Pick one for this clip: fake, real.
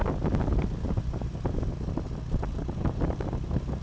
real